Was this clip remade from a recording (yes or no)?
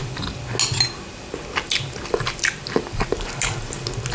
no